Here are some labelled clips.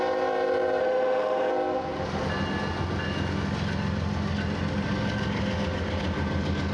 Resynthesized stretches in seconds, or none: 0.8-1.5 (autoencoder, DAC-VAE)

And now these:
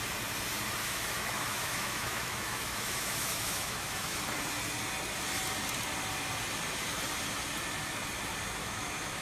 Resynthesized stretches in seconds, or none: 0.8-4.2 (autoencoder, DAC-VAE); 8.6-9.2

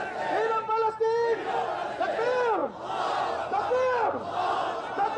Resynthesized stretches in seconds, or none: none

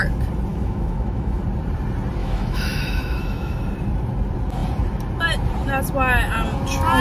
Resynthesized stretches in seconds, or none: 0.5-1.4 (autoencoder, DAC-VAE); 2.2-3.6

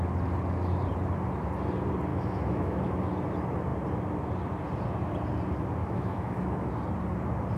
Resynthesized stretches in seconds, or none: 2.1-3.1 (autoencoder, DAC-VAE); 5.8-6.7

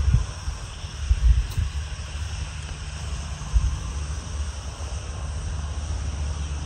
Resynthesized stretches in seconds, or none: none